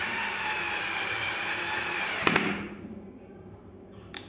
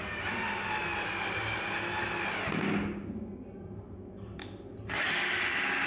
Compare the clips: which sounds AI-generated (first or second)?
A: first